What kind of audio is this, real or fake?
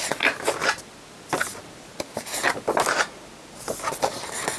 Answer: real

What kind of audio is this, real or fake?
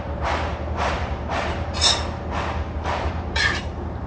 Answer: fake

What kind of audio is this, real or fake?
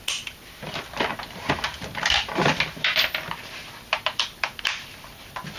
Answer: fake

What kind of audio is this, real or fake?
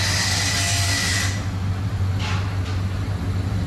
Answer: real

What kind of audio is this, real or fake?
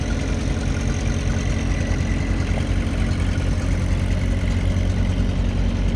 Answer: real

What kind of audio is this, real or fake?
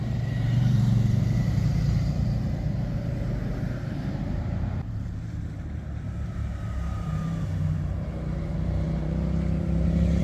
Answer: fake